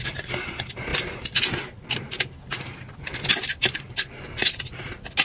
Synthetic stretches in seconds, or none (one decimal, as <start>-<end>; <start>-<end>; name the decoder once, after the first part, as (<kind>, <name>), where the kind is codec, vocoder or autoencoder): none